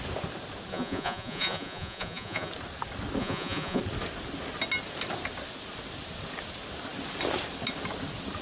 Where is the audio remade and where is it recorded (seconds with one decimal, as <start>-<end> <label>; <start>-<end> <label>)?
0.0-0.7 recorded; 0.7-2.5 remade; 2.5-3.2 recorded; 3.2-3.8 remade; 3.8-8.4 recorded